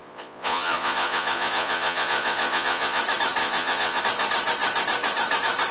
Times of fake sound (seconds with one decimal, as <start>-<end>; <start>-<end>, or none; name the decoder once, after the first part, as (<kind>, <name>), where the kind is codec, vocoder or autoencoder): 0.0-3.0 (vocoder, Vocos); 3.4-4.0